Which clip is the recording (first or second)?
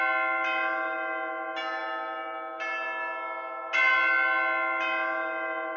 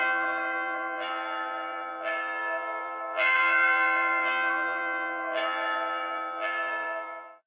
first